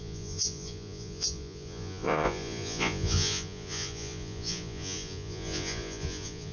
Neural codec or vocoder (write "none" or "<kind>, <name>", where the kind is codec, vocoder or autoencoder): vocoder, Vocos